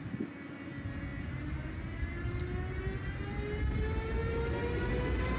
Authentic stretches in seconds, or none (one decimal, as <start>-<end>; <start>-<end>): 0.0-5.4